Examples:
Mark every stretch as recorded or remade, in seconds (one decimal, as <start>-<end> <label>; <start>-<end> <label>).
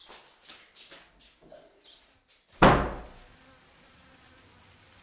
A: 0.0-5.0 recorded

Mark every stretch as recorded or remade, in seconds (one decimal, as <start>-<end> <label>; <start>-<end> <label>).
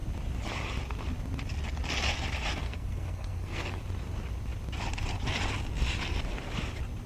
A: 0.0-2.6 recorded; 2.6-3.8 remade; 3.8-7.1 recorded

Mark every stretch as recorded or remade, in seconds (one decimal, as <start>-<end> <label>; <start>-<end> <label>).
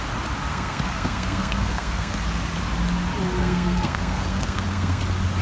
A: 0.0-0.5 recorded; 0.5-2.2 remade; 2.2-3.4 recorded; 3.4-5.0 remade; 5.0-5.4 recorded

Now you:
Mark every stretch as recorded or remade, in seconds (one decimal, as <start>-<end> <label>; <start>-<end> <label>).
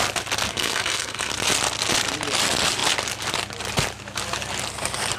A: 0.0-0.5 recorded; 0.5-1.3 remade; 1.3-5.2 recorded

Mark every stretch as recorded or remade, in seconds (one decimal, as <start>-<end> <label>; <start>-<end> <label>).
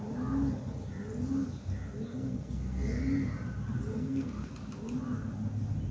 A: 0.0-2.1 recorded; 2.1-3.0 remade; 3.0-3.9 recorded; 3.9-4.5 remade; 4.5-5.9 recorded